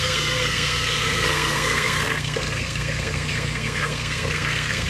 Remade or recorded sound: remade